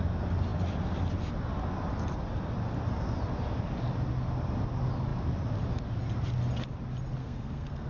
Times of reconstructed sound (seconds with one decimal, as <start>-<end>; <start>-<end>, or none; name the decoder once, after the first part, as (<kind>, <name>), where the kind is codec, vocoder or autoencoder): 7.2-7.9 (codec, SNAC)